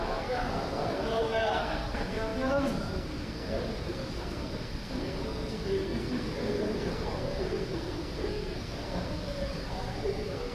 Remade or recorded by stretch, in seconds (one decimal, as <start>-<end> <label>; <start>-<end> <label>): 0.0-10.5 remade